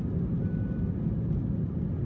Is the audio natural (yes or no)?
yes